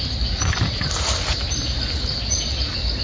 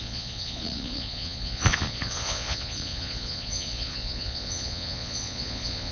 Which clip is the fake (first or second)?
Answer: second